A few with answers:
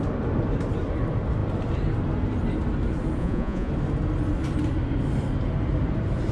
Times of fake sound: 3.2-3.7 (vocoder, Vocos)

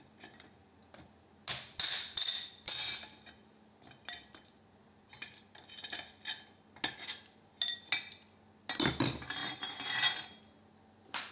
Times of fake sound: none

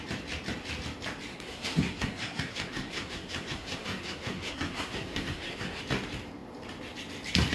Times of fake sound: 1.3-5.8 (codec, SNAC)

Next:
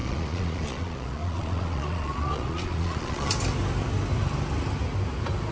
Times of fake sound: 0.0-3.3 (vocoder, Vocos)

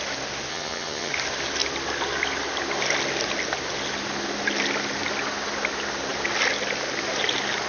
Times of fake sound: 0.5-1.1 (vocoder, HiFi-GAN)

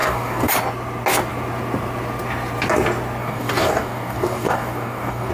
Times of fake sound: 0.0-0.5 (codec, DAC); 3.2-5.3

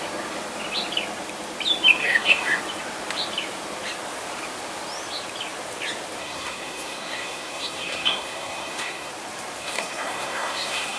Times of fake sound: 2.0-2.6 (codec, SNAC); 6.2-9.1; 9.6-11.0